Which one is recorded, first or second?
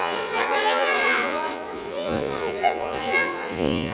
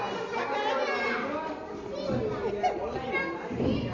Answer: second